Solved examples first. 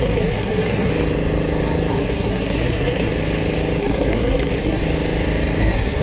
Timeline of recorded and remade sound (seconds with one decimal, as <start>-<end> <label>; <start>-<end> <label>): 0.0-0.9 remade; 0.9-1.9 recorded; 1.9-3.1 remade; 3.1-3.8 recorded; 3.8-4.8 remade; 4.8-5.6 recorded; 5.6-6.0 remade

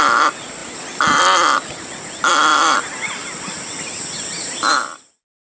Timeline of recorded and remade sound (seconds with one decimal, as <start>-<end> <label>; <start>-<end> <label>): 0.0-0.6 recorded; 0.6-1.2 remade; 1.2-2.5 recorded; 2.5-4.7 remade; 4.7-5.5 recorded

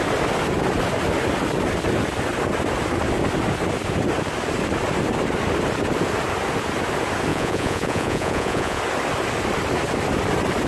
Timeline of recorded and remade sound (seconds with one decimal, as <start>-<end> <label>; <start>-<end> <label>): 0.0-7.3 recorded; 7.3-8.8 remade; 8.8-10.7 recorded

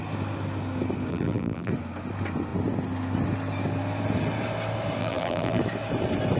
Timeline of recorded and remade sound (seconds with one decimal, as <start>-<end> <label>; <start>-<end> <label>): 0.0-1.1 recorded; 1.1-1.7 remade; 1.7-5.0 recorded; 5.0-5.6 remade; 5.6-6.4 recorded

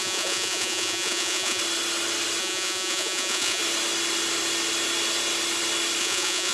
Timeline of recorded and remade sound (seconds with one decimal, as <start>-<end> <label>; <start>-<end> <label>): 0.0-1.6 remade; 1.6-2.4 recorded; 2.4-3.6 remade; 3.6-6.0 recorded; 6.0-6.5 remade